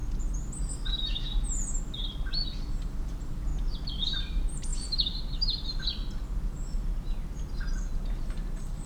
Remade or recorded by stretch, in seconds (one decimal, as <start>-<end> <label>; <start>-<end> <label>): 0.0-2.7 recorded; 2.7-3.5 remade; 3.5-4.0 recorded; 4.0-4.7 remade; 4.7-8.1 recorded; 8.1-8.9 remade